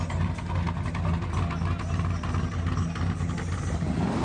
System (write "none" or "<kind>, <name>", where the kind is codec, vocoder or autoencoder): none